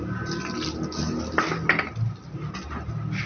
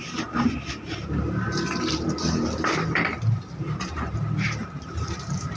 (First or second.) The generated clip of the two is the second